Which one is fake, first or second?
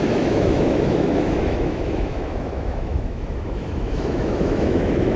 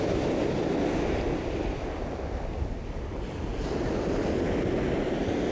first